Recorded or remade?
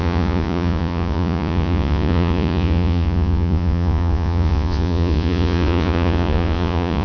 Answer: remade